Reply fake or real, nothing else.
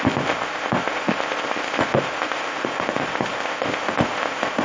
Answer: fake